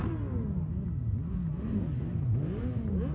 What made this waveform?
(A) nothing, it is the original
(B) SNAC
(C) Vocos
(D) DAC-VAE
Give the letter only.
A